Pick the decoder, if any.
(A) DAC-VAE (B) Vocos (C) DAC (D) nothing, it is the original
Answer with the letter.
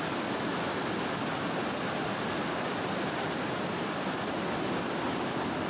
D